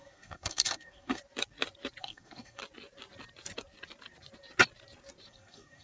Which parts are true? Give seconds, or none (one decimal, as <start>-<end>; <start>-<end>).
1.2-2.0; 2.6-5.3